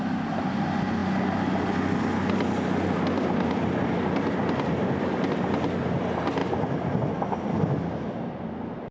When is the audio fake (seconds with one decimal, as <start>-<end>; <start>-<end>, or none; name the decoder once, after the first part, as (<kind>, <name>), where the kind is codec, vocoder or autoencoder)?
none